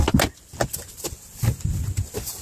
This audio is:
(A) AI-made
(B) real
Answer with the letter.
B